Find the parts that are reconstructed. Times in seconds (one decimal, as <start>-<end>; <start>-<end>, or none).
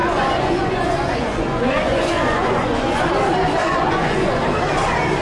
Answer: 0.0-3.1; 3.6-4.4